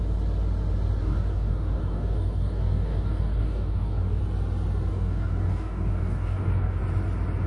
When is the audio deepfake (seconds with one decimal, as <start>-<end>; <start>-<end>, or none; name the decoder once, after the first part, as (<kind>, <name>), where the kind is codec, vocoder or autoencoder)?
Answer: 1.0-4.2 (codec, DAC); 4.9-6.8